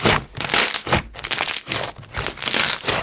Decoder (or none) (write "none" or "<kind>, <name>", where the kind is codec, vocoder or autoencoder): none